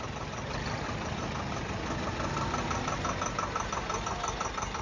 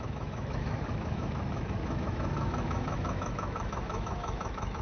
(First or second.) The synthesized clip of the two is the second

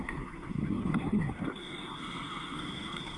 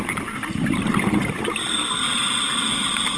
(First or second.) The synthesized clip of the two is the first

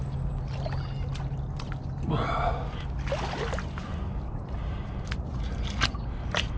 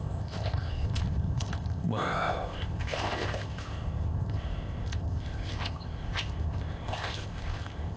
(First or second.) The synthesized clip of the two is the second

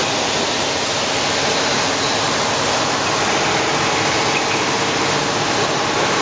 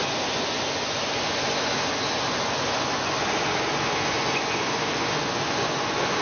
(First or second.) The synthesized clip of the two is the second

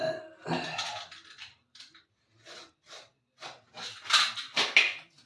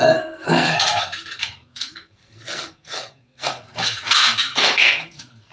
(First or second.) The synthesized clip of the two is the second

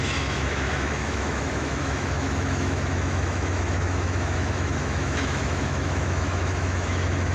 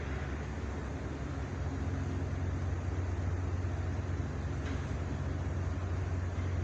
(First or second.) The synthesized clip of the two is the first